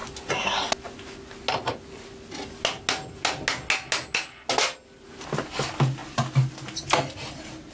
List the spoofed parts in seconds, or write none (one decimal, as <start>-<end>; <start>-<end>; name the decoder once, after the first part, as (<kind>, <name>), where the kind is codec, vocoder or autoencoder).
none